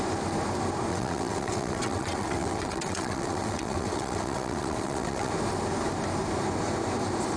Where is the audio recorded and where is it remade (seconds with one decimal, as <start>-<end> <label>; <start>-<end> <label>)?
0.0-0.9 recorded; 0.9-5.3 remade; 5.3-7.4 recorded